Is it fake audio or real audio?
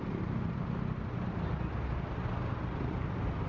real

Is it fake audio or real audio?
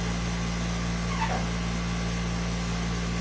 real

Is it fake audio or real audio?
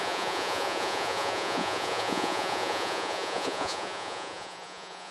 fake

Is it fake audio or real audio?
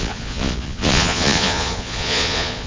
fake